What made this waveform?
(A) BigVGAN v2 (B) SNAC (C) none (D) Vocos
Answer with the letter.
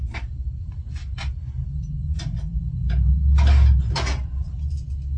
C